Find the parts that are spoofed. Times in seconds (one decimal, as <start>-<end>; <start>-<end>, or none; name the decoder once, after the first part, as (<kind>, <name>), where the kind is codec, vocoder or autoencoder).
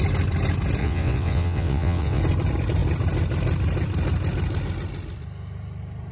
0.8-2.2 (vocoder, WaveNeXt)